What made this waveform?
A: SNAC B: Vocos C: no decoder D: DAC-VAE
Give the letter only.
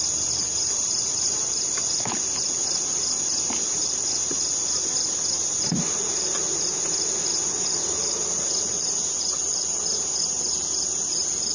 C